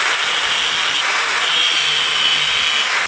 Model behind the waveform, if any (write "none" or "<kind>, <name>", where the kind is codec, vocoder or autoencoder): none